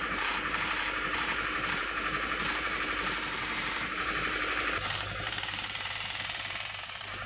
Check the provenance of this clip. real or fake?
fake